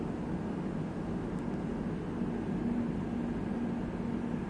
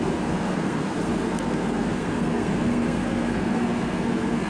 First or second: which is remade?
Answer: second